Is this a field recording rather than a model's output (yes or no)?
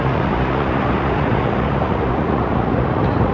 no